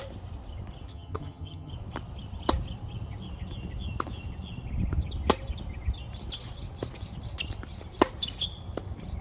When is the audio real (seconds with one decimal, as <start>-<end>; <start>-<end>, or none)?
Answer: 0.0-0.9; 1.7-9.2